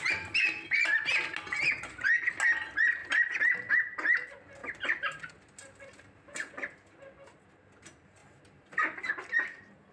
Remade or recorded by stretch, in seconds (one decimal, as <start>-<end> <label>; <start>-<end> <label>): 0.0-3.0 recorded; 3.0-3.7 remade; 3.7-4.6 recorded; 4.6-5.3 remade; 5.3-9.9 recorded